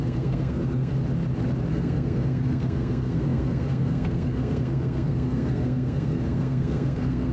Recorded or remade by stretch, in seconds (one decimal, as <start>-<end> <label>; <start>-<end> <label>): 0.0-0.9 remade; 0.9-1.7 recorded; 1.7-7.3 remade